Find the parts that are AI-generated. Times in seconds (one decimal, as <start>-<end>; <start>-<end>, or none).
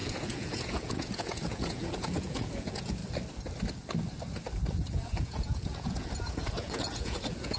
0.0-3.0; 4.8-7.6